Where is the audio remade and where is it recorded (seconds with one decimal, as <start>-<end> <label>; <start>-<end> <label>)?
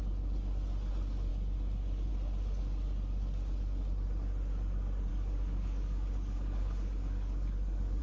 0.0-5.1 recorded; 5.1-8.0 remade